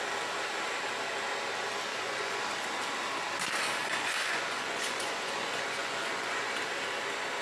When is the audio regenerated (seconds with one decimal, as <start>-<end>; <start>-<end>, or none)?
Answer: 1.9-2.4; 3.8-6.5